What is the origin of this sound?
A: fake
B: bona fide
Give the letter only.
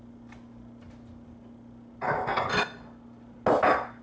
B